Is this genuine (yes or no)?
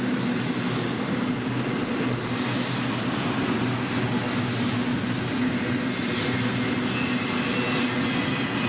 yes